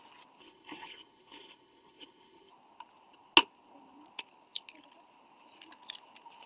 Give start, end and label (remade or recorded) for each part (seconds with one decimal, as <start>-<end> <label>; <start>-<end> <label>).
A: 0.0-0.4 recorded; 0.4-2.5 remade; 2.5-6.5 recorded